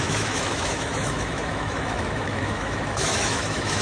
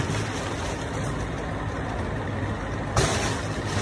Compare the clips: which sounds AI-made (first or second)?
first